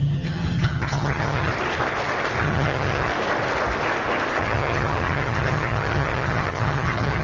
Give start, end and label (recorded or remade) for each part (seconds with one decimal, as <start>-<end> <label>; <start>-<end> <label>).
0.0-1.5 remade; 1.5-2.4 recorded; 2.4-3.1 remade; 3.1-4.4 recorded; 4.4-7.2 remade